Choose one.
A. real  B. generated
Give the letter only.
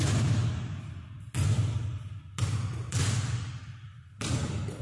A